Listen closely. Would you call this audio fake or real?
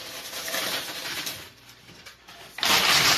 real